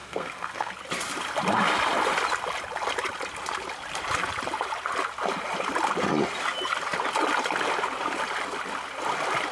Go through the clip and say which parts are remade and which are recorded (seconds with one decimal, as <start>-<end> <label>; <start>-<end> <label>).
0.0-0.7 remade; 0.7-9.5 recorded